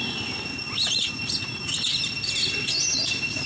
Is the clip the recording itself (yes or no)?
yes